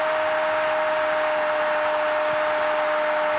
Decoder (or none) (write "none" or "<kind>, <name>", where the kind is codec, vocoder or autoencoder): none